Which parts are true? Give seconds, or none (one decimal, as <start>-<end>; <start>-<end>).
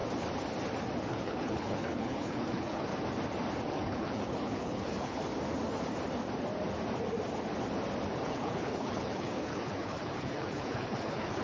0.0-1.1; 2.9-3.7; 5.2-8.2